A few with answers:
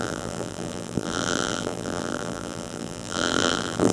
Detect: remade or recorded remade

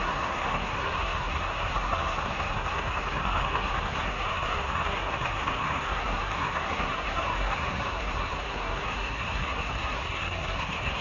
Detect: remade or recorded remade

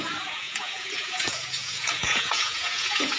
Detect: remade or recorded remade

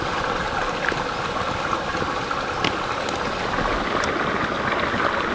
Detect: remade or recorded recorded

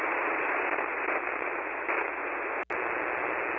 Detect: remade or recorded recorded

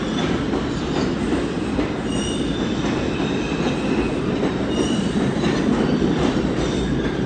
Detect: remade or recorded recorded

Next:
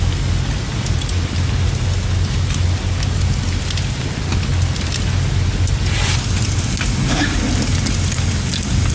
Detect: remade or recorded recorded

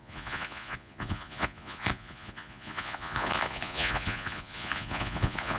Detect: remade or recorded remade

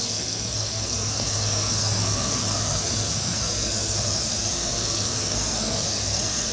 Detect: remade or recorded remade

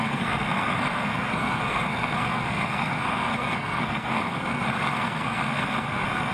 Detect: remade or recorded remade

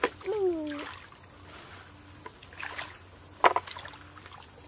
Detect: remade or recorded recorded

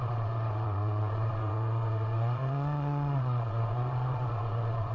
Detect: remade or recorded remade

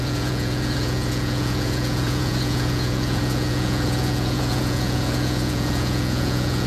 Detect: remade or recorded remade